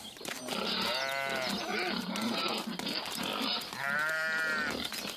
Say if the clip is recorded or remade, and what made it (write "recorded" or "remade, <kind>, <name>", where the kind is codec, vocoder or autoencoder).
recorded